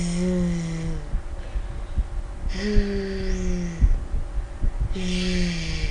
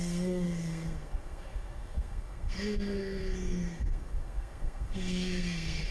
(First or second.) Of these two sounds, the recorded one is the first